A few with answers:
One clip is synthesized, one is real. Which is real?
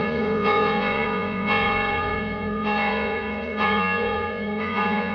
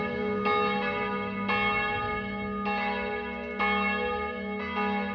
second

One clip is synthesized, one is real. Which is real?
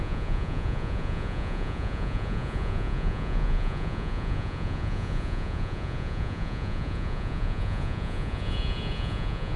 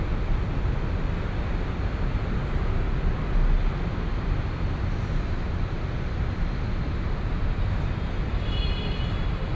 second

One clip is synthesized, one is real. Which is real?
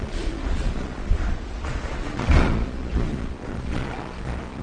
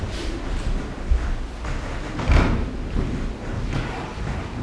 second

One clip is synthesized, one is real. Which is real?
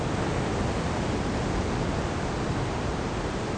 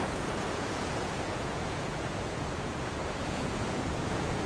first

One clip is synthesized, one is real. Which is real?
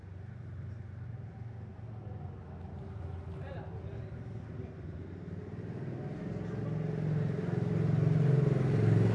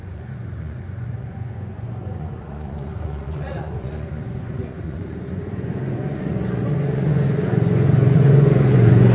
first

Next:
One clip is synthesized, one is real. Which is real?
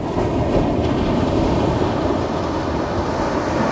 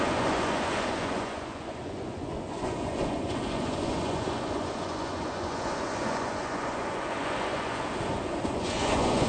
first